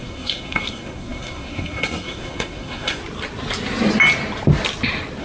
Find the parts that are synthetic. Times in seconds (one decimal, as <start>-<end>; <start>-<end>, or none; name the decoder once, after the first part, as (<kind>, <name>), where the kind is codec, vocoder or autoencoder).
0.0-3.0 (codec, SNAC)